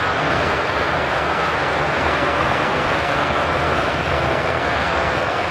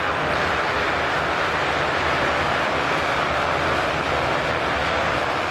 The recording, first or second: second